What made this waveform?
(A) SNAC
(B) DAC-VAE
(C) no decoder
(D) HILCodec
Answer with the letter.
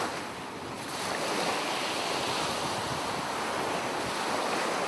C